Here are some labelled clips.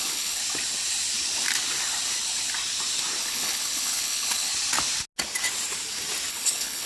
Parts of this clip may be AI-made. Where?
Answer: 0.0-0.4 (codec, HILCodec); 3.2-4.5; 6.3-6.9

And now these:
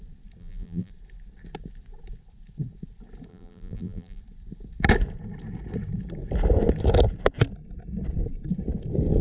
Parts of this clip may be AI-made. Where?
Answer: 0.4-0.9 (vocoder, BigVGAN v2); 3.3-4.2